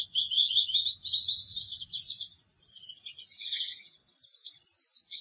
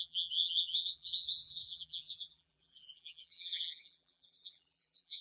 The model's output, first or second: second